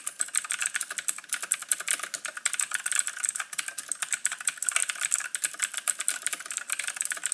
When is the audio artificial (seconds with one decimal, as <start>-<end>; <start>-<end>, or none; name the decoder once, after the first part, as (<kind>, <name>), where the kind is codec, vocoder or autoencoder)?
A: none